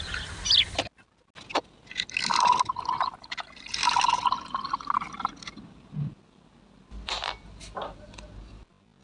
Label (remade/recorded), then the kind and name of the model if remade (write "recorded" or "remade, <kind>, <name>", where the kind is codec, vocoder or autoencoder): recorded